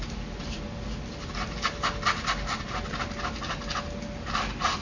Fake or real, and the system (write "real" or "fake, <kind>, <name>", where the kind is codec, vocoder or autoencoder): real